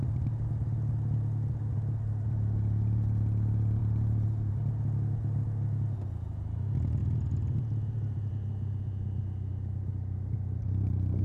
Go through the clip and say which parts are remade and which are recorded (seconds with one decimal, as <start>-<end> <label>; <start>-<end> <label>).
0.0-3.8 recorded; 3.8-4.5 remade; 4.5-7.0 recorded; 7.0-8.3 remade; 8.3-11.2 recorded